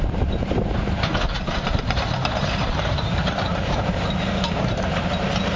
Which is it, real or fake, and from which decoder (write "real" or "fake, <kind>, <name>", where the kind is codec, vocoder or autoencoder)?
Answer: fake, vocoder, BigVGAN v2